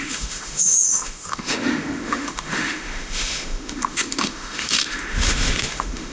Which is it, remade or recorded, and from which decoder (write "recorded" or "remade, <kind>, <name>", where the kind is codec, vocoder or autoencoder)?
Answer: remade, autoencoder, DAC-VAE